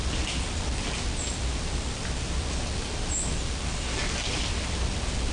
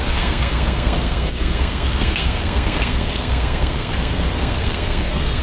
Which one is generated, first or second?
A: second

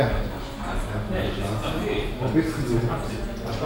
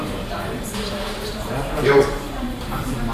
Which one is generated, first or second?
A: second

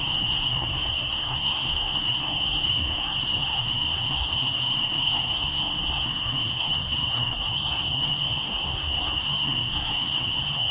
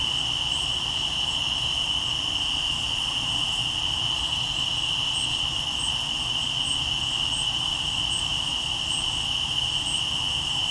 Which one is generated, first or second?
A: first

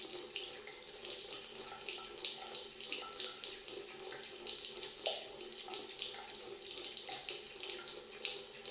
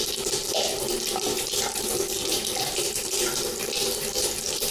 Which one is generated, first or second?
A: second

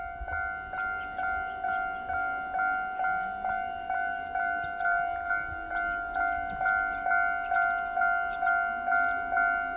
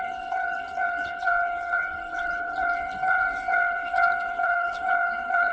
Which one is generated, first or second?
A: second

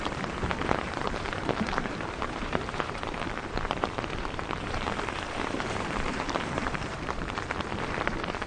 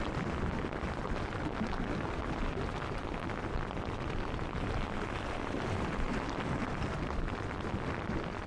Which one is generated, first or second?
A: first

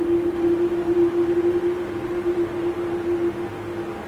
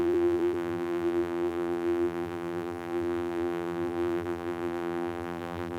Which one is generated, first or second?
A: second